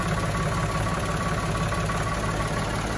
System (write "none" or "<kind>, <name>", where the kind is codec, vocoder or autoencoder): none